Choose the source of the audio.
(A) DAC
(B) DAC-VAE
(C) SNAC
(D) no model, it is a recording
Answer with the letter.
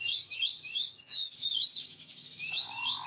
A